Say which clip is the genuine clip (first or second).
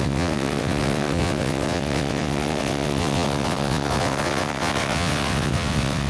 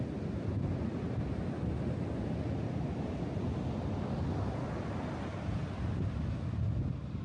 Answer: second